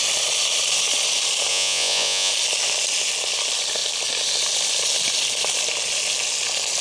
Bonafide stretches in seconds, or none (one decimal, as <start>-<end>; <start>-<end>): 0.0-1.5; 2.3-6.8